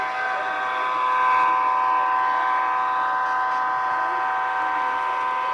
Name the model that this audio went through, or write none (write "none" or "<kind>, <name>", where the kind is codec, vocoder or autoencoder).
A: none